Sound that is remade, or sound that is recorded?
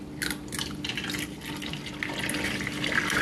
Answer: recorded